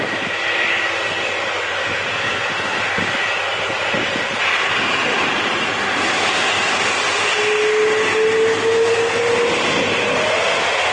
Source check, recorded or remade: recorded